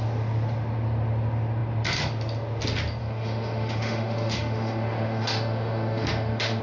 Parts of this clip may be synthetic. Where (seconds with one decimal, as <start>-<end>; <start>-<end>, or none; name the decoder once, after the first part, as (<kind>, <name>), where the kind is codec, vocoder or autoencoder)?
3.0-6.6 (autoencoder, DAC-VAE)